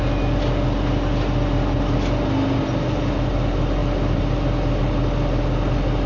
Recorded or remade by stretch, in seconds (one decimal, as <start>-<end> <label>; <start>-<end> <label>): 0.0-6.1 recorded